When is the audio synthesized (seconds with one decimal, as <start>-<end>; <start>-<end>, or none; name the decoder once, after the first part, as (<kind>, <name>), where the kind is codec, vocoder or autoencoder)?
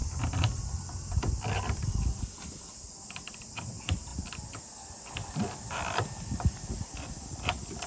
none